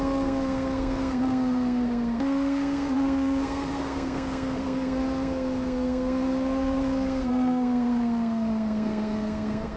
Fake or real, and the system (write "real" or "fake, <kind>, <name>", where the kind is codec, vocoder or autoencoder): fake, codec, SNAC